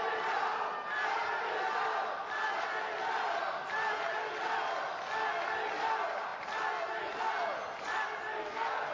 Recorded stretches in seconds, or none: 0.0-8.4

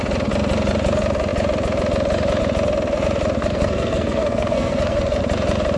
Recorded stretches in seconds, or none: 0.0-3.4; 5.2-5.8

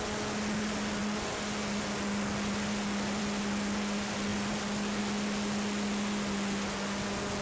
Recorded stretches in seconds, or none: 0.0-7.4

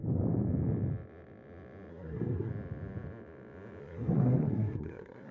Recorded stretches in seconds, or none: 0.0-1.9; 2.5-3.8

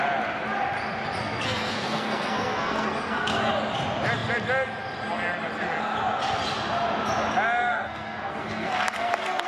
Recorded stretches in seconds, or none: 0.0-1.2; 3.5-7.6

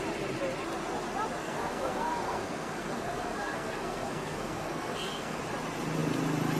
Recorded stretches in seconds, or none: 0.0-1.4; 5.4-6.6

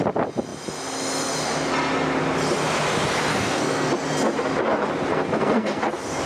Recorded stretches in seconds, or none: 0.0-3.3; 3.9-5.1; 5.8-6.3